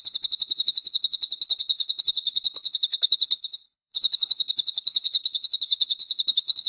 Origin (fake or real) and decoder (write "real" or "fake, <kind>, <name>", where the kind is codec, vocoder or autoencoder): fake, codec, HILCodec